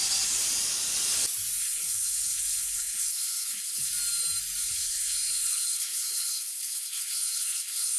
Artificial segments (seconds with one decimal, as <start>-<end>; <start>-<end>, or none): 1.6-3.9; 4.6-8.0